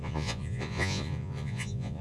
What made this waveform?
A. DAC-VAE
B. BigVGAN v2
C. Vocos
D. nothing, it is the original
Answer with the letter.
C